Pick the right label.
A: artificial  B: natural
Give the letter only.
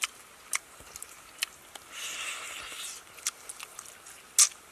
B